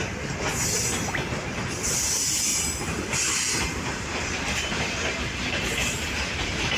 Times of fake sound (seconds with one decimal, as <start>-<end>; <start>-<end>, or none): 2.5-6.8